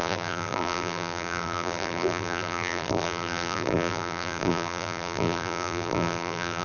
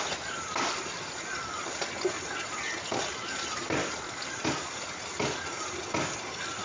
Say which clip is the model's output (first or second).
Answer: first